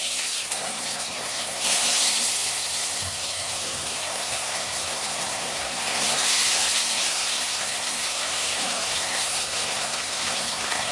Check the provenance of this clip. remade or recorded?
remade